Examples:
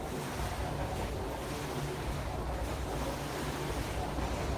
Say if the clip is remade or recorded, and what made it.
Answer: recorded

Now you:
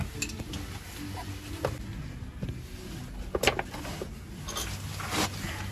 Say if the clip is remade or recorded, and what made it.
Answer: recorded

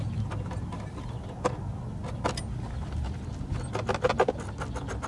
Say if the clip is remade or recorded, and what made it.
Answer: recorded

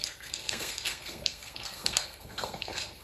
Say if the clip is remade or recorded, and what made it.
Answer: remade, codec, SNAC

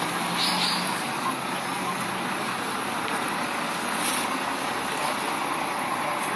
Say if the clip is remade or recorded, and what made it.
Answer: recorded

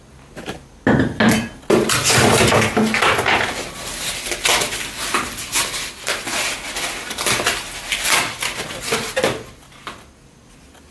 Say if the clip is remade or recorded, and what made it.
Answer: recorded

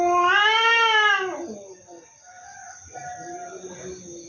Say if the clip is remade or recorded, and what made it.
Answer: recorded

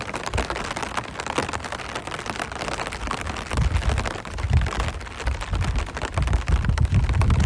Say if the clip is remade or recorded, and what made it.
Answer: recorded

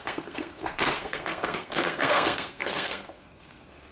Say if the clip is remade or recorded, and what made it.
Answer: remade, codec, SNAC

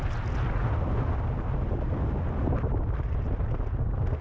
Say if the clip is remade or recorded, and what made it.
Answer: recorded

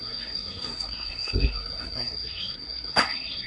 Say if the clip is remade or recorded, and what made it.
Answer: remade, codec, SNAC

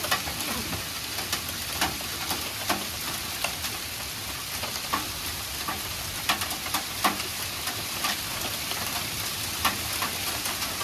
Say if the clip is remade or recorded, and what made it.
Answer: recorded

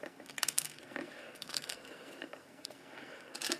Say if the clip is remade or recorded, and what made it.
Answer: remade, codec, SNAC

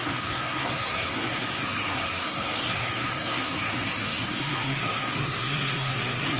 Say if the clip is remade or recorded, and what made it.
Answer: remade, codec, SNAC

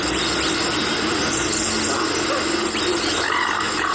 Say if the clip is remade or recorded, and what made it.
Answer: recorded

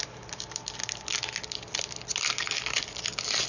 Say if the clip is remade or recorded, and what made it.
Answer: recorded